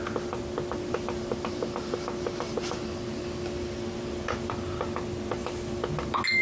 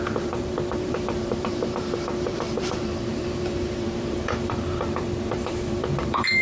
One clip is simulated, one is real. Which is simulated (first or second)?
second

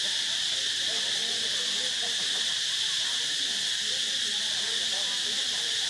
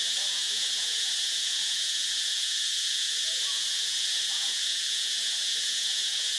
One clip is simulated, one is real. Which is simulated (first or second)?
second